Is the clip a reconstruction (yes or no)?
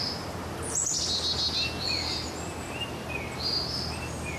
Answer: no